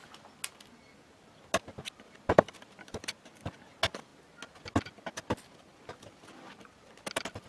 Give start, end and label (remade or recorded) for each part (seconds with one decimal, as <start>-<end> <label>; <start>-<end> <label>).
0.0-7.5 recorded